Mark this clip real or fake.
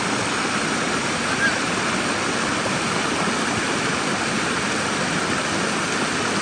real